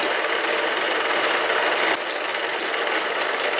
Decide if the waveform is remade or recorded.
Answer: recorded